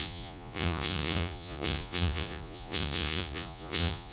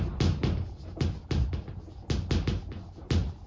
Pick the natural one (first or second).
second